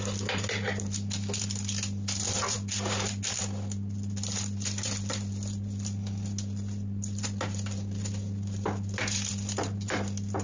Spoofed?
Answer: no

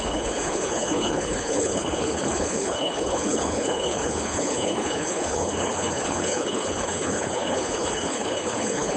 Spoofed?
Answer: yes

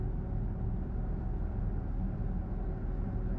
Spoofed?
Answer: no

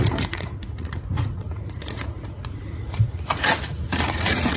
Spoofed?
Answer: yes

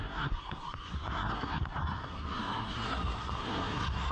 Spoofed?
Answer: yes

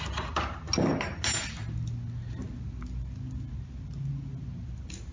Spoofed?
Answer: no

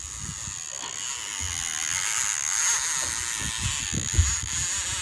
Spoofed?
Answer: no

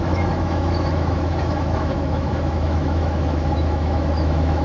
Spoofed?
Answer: yes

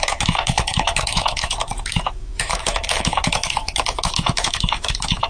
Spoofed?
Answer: yes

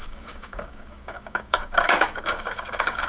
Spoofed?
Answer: yes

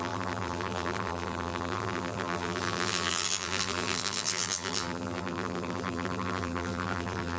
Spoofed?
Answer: yes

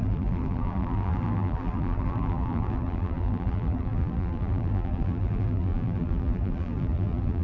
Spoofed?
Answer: yes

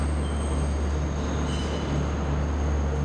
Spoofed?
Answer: no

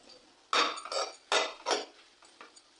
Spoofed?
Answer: no